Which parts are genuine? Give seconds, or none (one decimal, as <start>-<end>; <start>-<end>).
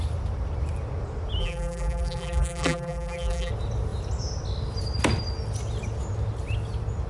0.0-1.4; 3.5-7.1